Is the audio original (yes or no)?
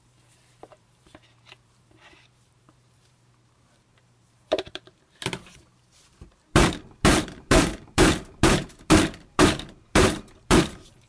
no